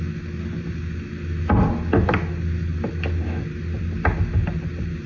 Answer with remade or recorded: recorded